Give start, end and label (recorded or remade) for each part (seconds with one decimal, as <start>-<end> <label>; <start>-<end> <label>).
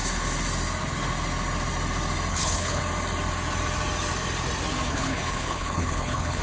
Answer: 0.0-2.3 recorded; 2.3-2.8 remade; 2.8-4.9 recorded; 4.9-6.4 remade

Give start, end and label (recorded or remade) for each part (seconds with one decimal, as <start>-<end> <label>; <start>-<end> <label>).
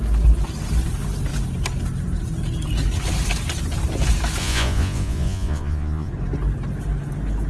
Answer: 0.0-4.4 recorded; 4.4-6.1 remade; 6.1-7.5 recorded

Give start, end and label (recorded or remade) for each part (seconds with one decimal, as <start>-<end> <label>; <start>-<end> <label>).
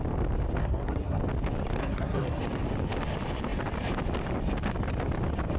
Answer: 0.0-0.6 recorded; 0.6-1.2 remade; 1.2-1.8 recorded; 1.8-2.4 remade; 2.4-5.6 recorded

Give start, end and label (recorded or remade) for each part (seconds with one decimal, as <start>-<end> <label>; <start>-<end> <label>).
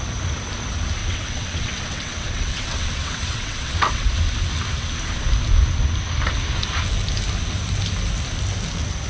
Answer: 0.0-1.0 recorded; 1.0-4.1 remade; 4.1-9.1 recorded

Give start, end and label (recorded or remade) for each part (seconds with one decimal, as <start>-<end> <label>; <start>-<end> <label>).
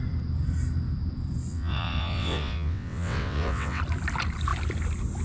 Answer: 0.0-1.5 recorded; 1.5-3.8 remade; 3.8-5.2 recorded